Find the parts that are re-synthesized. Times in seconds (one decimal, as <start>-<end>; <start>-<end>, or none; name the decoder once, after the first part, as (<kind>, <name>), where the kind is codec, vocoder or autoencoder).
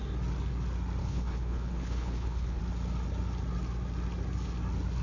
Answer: 1.0-2.6 (codec, HILCodec)